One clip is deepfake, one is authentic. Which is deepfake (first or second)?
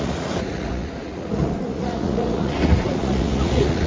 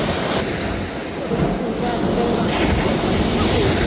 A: first